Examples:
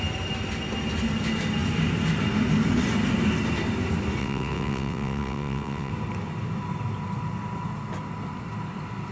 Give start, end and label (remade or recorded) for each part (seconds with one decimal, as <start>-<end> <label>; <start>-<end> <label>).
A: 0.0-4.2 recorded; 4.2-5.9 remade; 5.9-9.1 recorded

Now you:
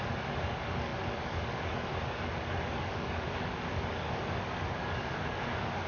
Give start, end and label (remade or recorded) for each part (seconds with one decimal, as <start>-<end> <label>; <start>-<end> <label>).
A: 0.0-5.9 remade

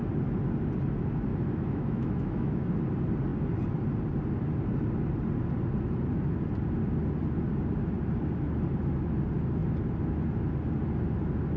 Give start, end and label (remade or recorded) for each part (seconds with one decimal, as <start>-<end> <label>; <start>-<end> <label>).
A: 0.0-1.3 recorded; 1.3-2.7 remade; 2.7-11.6 recorded